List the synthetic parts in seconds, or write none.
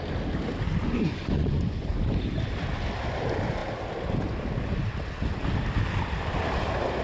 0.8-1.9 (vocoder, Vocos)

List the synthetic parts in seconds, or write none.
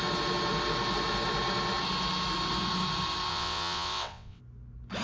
3.3-4.4 (vocoder, WaveNeXt)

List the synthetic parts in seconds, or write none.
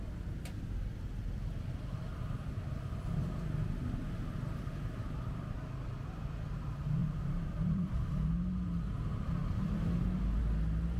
7.0-8.0 (vocoder, BigVGAN v2)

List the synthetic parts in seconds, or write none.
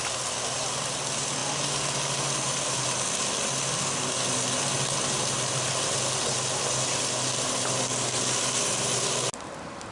none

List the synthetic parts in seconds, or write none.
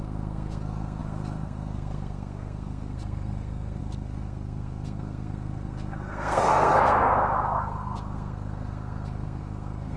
0.0-10.0 (codec, SNAC)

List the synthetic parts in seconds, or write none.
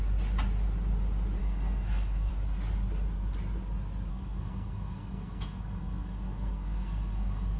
1.4-2.3 (codec, SNAC); 4.1-7.6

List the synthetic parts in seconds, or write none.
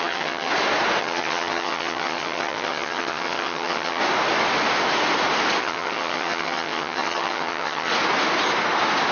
0.0-0.5 (vocoder, HiFi-GAN); 1.0-4.0; 5.6-7.9